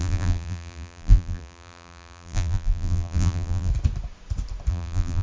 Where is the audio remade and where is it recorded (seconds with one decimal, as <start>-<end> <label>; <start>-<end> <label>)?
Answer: 0.0-3.7 remade; 3.7-4.7 recorded; 4.7-5.2 remade